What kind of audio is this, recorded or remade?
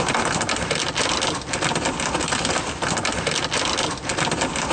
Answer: remade